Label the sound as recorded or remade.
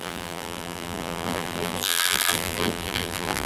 remade